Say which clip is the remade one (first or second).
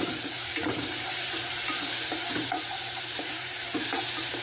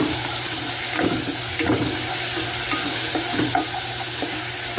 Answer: first